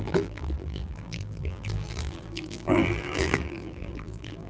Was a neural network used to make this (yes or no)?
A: yes